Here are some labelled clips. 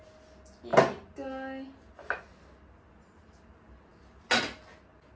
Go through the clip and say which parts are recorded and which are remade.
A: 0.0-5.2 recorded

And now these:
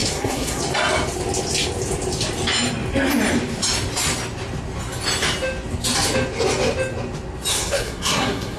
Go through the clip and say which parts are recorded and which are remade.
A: 0.0-0.6 remade; 0.6-7.5 recorded; 7.5-8.6 remade

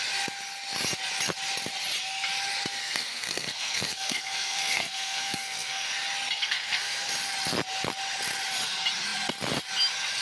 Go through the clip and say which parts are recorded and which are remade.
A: 0.0-2.8 recorded; 2.8-5.9 remade; 5.9-6.4 recorded; 6.4-7.1 remade; 7.1-10.2 recorded